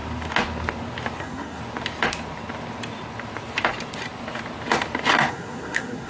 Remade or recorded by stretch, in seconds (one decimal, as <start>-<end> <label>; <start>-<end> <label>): 0.0-1.2 recorded; 1.2-1.6 remade; 1.6-5.3 recorded; 5.3-6.1 remade